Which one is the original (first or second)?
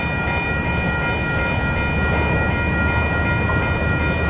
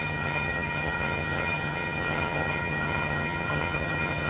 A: first